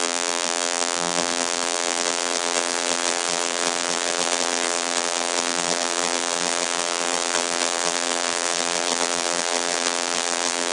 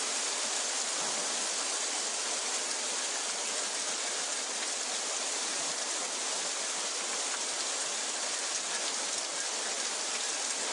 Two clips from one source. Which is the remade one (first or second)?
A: first